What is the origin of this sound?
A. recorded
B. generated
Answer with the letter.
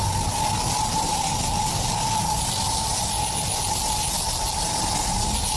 A